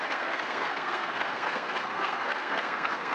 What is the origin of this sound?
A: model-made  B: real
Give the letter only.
A